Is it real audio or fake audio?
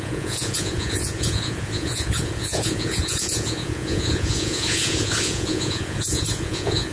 fake